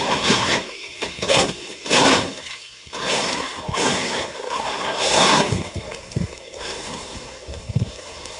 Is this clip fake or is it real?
fake